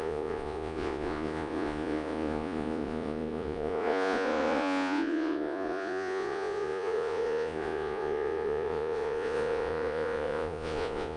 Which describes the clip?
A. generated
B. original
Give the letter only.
A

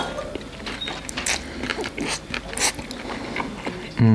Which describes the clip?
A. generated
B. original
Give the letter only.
B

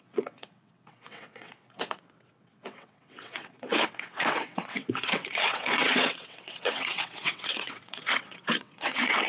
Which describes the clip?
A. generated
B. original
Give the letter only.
A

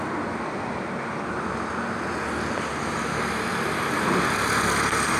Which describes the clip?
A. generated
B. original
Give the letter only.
B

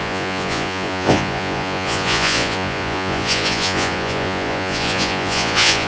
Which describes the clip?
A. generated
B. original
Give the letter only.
A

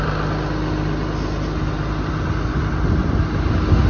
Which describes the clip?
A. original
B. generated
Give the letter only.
A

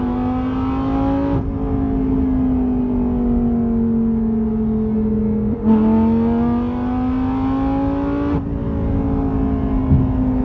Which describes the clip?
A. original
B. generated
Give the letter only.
A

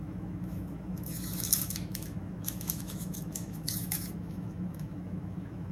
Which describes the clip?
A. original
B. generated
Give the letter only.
B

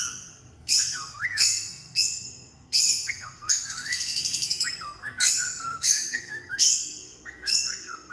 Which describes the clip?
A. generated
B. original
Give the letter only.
A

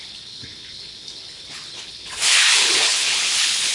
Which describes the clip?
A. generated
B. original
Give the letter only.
A